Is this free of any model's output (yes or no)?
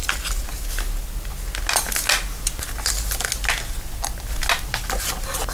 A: yes